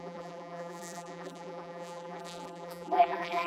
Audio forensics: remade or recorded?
remade